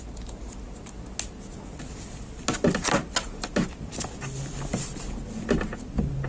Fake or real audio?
real